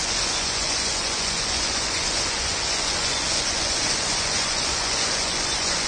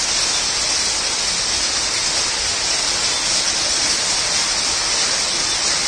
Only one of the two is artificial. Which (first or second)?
first